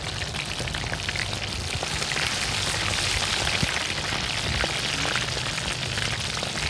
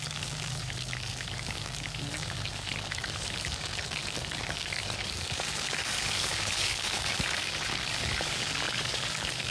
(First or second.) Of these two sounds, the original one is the first